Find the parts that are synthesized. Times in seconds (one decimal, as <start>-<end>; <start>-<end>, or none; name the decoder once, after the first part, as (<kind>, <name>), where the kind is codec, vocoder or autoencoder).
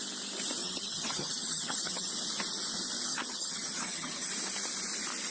0.6-2.1 (vocoder, HiFi-GAN); 3.1-4.3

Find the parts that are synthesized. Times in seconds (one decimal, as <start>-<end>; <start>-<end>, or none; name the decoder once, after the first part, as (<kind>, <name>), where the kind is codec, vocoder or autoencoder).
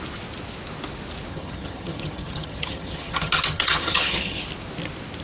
1.3-4.4 (vocoder, HiFi-GAN)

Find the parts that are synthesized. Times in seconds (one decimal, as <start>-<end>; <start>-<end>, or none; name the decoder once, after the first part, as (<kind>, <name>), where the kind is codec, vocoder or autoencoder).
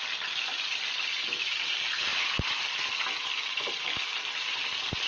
none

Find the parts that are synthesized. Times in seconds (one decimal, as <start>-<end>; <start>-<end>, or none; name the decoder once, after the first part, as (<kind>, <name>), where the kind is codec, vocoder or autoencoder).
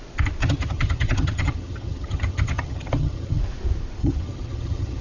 0.4-3.4 (vocoder, HiFi-GAN); 4.0-5.0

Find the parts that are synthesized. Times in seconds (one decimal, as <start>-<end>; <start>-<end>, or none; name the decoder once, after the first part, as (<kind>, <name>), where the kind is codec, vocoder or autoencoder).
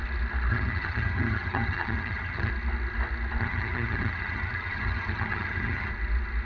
0.5-2.5 (vocoder, HiFi-GAN); 3.4-5.9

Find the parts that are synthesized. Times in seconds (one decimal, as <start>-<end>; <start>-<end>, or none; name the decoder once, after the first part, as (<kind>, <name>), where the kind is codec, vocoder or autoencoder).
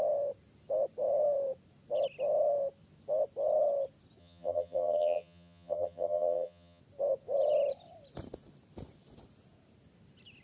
4.2-6.8 (vocoder, HiFi-GAN)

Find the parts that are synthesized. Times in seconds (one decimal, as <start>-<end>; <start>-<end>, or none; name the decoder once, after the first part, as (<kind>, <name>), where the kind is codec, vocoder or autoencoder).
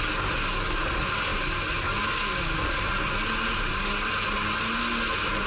none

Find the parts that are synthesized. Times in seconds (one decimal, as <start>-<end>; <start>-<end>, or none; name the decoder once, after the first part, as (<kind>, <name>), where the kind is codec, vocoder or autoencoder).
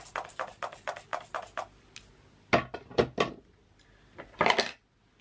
none